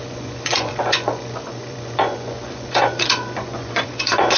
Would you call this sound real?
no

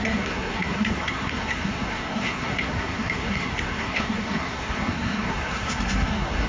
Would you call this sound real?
no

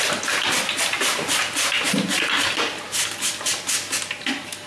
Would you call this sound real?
yes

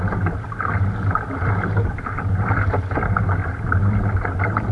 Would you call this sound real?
yes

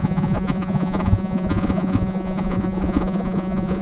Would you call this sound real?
no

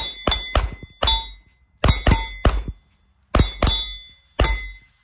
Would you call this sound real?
yes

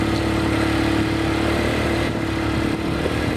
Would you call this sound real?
yes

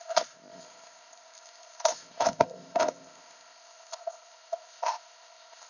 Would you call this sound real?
no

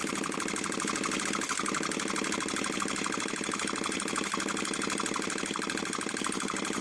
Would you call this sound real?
yes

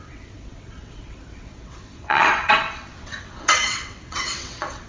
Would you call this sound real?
no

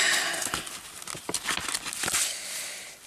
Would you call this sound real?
yes